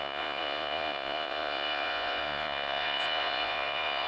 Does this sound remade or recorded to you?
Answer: remade